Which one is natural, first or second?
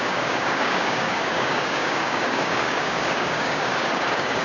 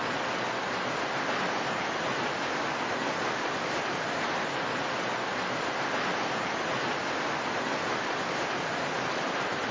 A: second